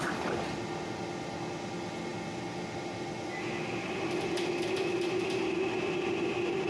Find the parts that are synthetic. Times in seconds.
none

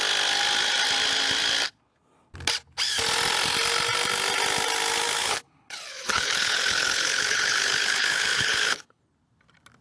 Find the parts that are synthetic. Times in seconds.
5.2-9.0